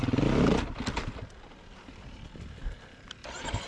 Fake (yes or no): yes